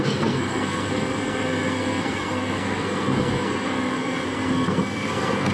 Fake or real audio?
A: fake